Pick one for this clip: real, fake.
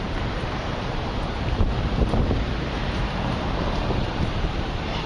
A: fake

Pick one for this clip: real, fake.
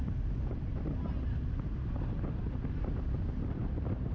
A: real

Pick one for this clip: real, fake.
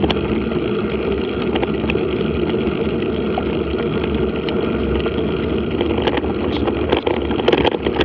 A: real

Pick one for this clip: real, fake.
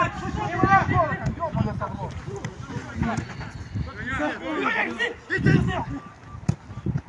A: real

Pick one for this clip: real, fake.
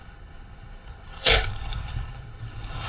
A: fake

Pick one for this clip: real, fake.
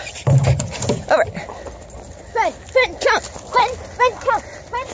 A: real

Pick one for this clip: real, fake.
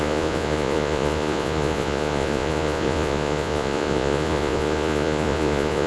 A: fake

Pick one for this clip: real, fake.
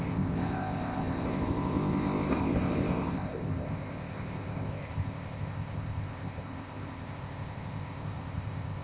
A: fake